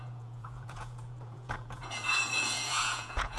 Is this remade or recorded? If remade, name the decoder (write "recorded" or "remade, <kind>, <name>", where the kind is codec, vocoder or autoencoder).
remade, vocoder, Vocos